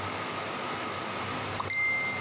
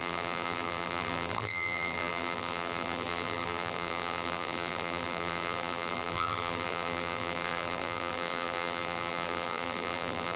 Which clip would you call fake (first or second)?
second